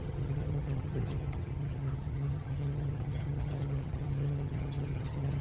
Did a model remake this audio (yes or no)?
yes